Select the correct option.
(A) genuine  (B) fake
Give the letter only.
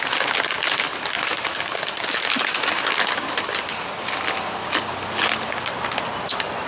A